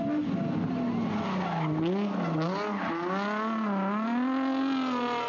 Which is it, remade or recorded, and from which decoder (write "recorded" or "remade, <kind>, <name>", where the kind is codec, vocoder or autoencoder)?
recorded